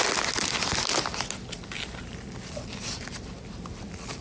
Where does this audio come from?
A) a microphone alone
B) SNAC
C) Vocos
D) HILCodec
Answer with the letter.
A